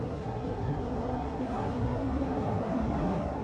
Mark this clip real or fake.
fake